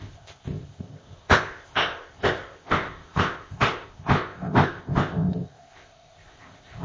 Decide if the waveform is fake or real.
fake